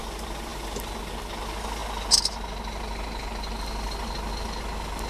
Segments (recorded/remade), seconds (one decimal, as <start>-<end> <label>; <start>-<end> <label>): 0.0-5.1 recorded